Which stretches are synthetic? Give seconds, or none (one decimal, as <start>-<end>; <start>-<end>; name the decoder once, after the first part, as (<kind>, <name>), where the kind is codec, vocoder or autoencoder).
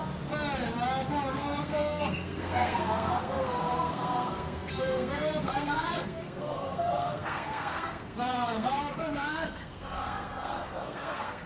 1.3-11.5 (codec, SNAC)